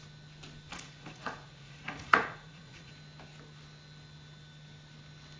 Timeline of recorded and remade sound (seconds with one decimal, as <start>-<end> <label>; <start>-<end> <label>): 0.0-0.7 recorded; 0.7-2.9 remade; 2.9-5.4 recorded